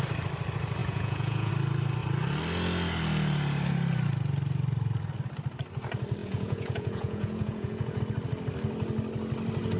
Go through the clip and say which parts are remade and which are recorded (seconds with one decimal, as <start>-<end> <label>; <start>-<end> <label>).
0.0-0.8 recorded; 0.8-1.5 remade; 1.5-6.2 recorded; 6.2-8.0 remade; 8.0-9.8 recorded